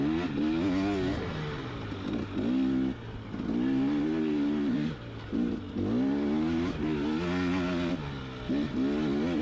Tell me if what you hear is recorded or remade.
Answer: recorded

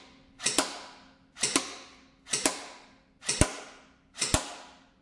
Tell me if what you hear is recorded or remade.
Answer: recorded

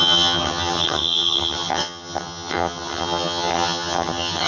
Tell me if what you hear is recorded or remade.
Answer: remade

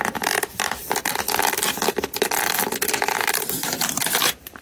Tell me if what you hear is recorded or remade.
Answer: recorded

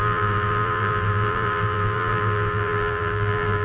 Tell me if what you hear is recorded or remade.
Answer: remade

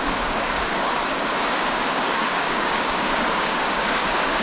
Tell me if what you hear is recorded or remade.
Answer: remade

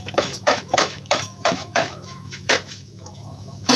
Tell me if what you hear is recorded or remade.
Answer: remade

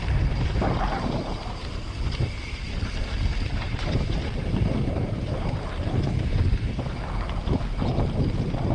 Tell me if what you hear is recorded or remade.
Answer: recorded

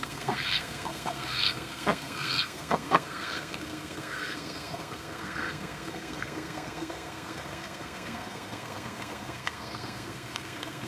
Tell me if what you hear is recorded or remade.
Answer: remade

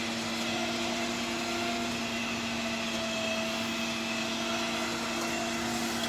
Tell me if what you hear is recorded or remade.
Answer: recorded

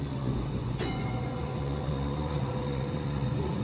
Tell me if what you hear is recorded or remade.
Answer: remade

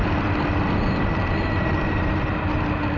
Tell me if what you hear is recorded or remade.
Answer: recorded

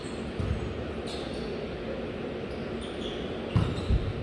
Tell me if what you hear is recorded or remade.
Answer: recorded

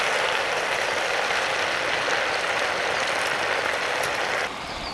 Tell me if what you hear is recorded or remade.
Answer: remade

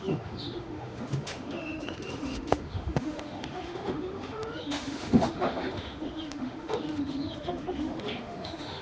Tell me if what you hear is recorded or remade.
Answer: remade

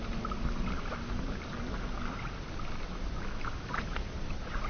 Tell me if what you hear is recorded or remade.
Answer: recorded